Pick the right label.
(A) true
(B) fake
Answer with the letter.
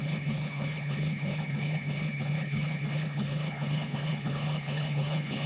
B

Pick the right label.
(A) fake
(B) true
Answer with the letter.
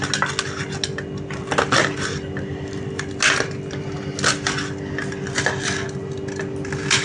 B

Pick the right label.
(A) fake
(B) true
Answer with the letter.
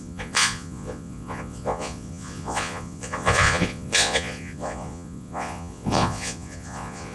A